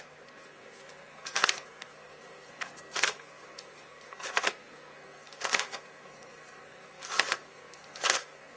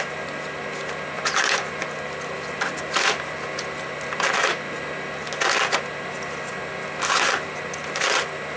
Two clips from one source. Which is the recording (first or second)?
second